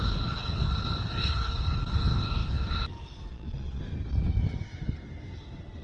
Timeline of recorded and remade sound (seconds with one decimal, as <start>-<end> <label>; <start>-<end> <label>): 0.0-3.3 recorded; 3.3-3.8 remade; 3.8-5.8 recorded